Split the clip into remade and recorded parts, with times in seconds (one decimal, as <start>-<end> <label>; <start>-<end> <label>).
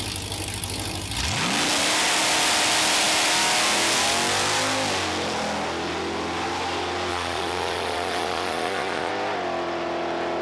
0.0-7.1 recorded; 7.1-9.1 remade; 9.1-10.4 recorded